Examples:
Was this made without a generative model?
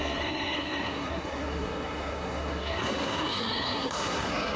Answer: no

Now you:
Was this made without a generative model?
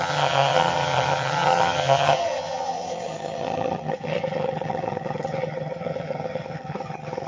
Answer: no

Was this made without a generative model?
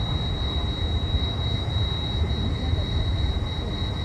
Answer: yes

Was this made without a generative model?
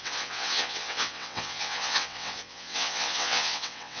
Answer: no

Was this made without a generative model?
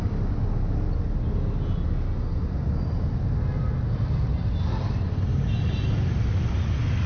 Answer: yes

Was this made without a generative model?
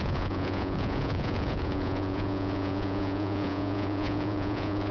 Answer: no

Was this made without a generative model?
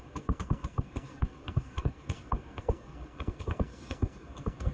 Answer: no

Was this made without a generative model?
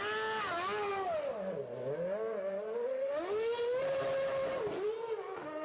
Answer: yes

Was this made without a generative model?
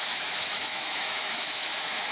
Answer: no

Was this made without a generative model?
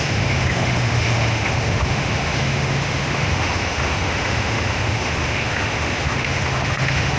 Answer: no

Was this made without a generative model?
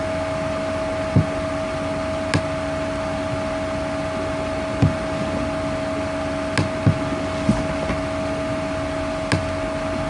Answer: yes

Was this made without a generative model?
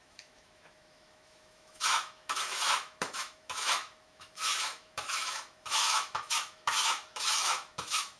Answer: no